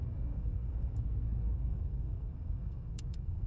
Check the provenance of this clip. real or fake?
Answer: fake